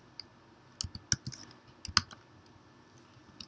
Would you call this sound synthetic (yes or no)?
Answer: no